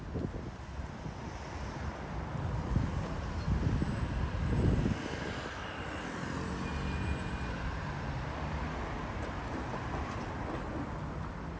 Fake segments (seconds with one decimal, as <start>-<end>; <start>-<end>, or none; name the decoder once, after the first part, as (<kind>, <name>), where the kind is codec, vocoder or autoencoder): none